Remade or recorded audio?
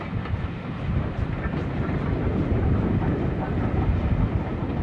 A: recorded